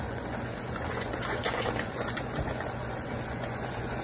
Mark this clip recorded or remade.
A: remade